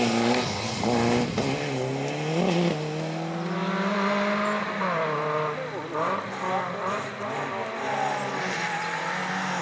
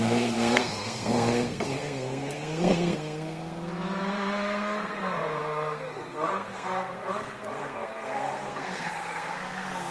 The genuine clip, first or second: first